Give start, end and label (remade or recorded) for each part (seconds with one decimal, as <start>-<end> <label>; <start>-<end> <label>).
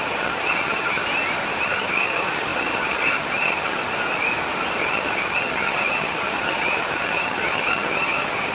0.0-1.0 remade; 1.0-1.6 recorded; 1.6-3.8 remade; 3.8-4.8 recorded; 4.8-8.5 remade